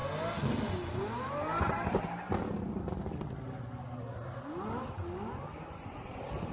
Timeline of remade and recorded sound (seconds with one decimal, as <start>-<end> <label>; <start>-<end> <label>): 0.0-6.5 recorded